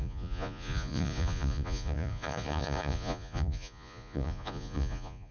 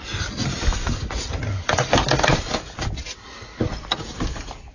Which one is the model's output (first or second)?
first